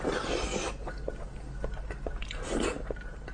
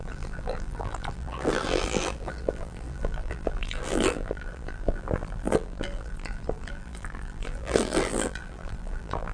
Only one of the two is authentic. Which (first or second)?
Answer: first